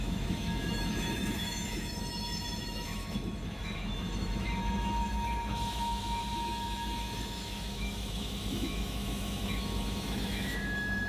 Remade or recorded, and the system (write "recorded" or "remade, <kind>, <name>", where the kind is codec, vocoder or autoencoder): remade, autoencoder, DAC-VAE